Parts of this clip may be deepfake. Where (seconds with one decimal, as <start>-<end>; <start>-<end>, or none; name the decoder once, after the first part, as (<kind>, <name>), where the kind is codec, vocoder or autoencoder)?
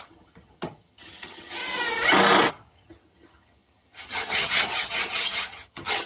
0.0-1.6 (vocoder, HiFi-GAN); 2.5-6.1